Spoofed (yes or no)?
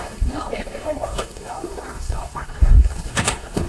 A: yes